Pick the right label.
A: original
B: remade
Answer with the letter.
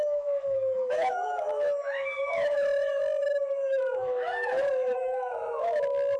B